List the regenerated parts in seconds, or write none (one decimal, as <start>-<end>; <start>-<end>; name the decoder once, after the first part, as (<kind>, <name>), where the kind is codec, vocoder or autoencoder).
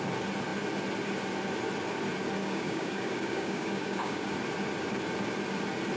2.4-4.3 (codec, DAC)